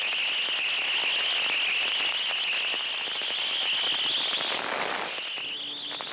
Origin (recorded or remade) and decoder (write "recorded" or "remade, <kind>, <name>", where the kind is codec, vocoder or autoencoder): recorded